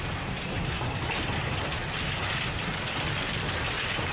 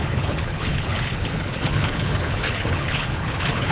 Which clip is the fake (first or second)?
second